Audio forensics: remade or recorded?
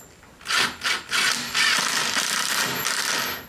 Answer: recorded